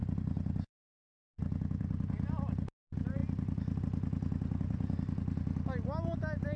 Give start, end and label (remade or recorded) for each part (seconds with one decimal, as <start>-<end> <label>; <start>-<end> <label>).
0.0-6.6 recorded